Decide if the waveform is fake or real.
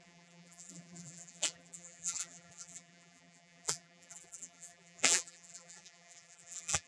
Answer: fake